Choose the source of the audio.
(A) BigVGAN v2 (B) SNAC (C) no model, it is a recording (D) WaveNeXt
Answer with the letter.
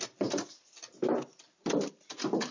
C